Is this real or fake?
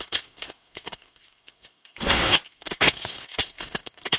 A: fake